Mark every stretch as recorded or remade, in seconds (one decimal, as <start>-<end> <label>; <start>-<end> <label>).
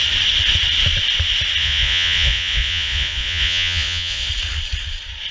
0.0-1.6 recorded; 1.6-4.3 remade; 4.3-5.3 recorded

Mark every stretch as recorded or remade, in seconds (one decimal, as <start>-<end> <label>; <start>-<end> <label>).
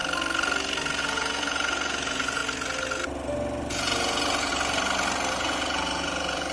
0.0-1.0 recorded; 1.0-2.4 remade; 2.4-3.7 recorded; 3.7-4.5 remade; 4.5-5.3 recorded; 5.3-6.5 remade